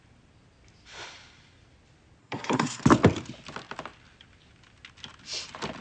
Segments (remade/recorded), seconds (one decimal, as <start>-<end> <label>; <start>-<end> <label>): 0.0-2.2 recorded; 2.2-2.8 remade; 2.8-5.8 recorded